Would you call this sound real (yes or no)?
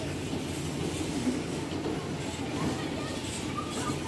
yes